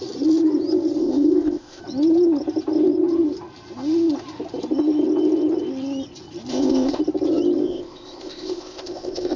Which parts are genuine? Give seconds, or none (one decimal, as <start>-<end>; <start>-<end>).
0.0-1.0; 1.8-6.5; 7.0-7.6